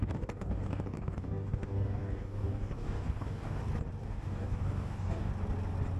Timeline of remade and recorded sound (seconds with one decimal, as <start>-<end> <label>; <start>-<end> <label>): 0.0-3.6 remade; 3.6-4.0 recorded; 4.0-5.3 remade; 5.3-6.0 recorded